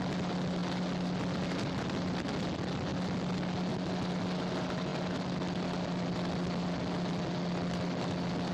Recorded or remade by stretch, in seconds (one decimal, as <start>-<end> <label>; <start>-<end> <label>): 0.0-8.5 recorded

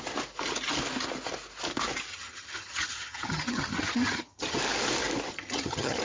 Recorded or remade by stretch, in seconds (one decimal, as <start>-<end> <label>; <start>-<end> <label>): 0.0-2.1 recorded; 2.1-4.6 remade; 4.6-5.3 recorded; 5.3-6.0 remade

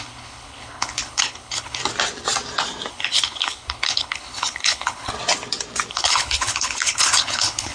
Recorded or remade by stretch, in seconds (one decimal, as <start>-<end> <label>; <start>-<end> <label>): 0.0-1.8 remade; 1.8-2.9 recorded; 2.9-5.1 remade; 5.1-5.9 recorded; 5.9-7.7 remade

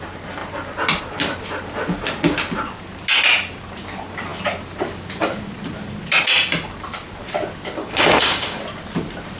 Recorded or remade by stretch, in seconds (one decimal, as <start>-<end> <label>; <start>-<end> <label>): 0.0-7.8 recorded; 7.8-8.6 remade; 8.6-9.4 recorded

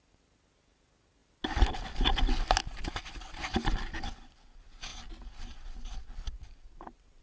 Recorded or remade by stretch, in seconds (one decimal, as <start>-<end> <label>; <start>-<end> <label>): 0.0-7.2 recorded

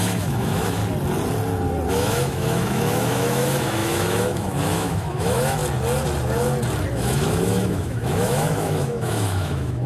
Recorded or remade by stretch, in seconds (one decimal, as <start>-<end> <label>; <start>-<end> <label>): 0.0-0.8 remade; 0.8-1.9 recorded; 1.9-5.6 remade; 5.6-6.9 recorded; 6.9-9.9 remade

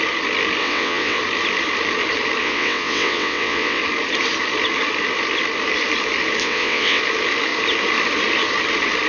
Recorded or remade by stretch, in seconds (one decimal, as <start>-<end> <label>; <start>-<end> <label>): 0.0-0.6 recorded; 0.6-1.2 remade; 1.2-2.4 recorded; 2.4-3.8 remade; 3.8-6.4 recorded; 6.4-7.0 remade; 7.0-9.1 recorded